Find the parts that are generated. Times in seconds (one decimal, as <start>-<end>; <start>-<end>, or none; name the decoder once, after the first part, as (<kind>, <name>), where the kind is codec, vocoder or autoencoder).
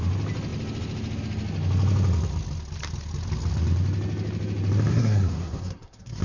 4.9-6.2 (codec, SNAC)